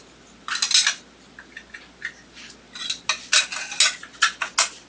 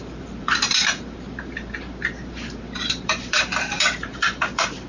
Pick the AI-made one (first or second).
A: second